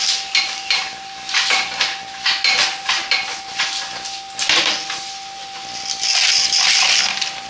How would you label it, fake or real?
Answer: real